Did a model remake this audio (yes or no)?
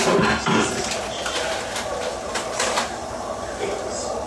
no